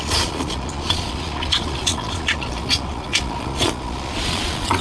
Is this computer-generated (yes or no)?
yes